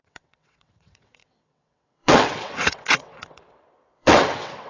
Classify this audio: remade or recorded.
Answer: remade